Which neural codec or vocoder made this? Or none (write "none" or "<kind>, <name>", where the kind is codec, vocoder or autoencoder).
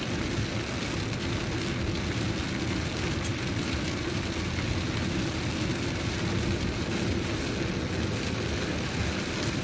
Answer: none